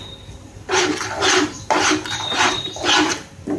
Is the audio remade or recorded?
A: remade